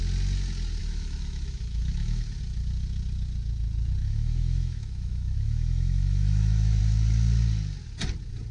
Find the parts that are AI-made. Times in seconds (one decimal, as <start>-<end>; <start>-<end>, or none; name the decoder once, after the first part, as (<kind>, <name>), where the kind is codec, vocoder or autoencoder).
0.8-2.4 (autoencoder, DAC-VAE); 4.0-6.8